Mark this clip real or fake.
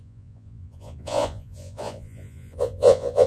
fake